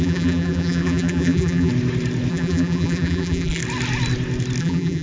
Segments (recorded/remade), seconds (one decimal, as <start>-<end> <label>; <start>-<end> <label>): 0.0-1.7 remade; 1.7-2.3 recorded; 2.3-3.6 remade; 3.6-4.6 recorded; 4.6-5.0 remade